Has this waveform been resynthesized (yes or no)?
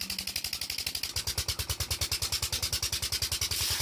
no